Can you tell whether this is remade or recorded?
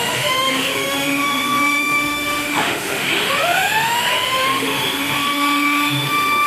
remade